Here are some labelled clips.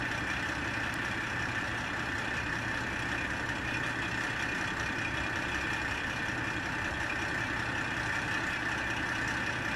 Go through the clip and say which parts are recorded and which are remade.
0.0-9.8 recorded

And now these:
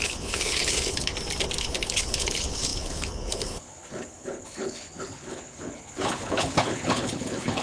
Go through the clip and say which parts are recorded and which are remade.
0.0-1.1 remade; 1.1-1.6 recorded; 1.6-7.6 remade

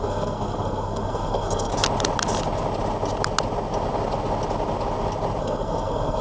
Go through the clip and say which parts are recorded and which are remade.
0.0-1.7 remade; 1.7-5.4 recorded; 5.4-6.2 remade

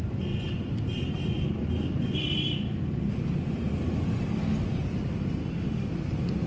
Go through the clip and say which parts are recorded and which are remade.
0.0-5.4 recorded; 5.4-5.9 remade; 5.9-6.5 recorded

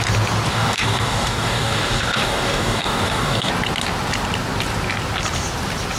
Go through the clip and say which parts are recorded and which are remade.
0.0-0.5 recorded; 0.5-3.5 remade; 3.5-6.0 recorded

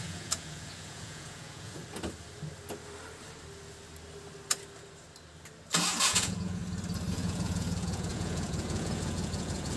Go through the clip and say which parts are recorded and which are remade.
0.0-1.8 remade; 1.8-6.0 recorded; 6.0-6.6 remade; 6.6-7.1 recorded; 7.1-9.8 remade

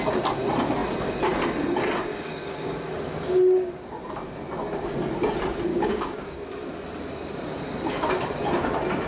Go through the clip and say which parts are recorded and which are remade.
0.0-2.1 recorded; 2.1-3.7 remade; 3.7-5.7 recorded; 5.7-6.4 remade; 6.4-9.1 recorded

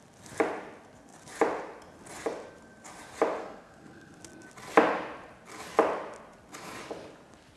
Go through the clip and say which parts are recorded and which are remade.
0.0-3.4 recorded; 3.4-4.2 remade; 4.2-7.6 recorded